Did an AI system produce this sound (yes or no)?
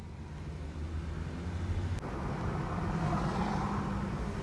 no